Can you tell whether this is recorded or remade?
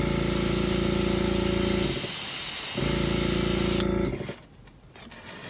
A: recorded